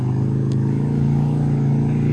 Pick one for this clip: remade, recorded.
remade